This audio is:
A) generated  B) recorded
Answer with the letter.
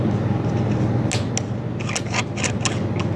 B